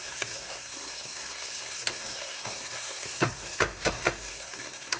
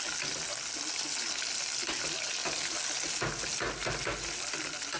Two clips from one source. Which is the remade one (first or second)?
first